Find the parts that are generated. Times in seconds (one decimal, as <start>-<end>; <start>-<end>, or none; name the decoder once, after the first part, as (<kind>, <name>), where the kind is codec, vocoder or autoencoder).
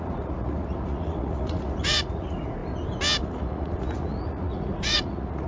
0.0-2.6 (vocoder, Vocos); 3.2-5.5